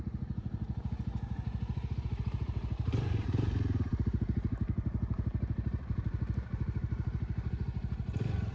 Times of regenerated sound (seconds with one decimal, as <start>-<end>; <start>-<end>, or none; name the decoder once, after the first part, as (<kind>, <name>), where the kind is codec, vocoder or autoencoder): 0.0-8.5 (vocoder, BigVGAN v2)